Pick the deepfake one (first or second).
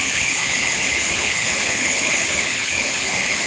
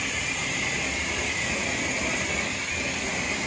first